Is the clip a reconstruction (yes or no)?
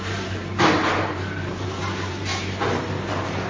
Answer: yes